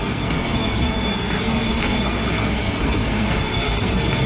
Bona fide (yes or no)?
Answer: no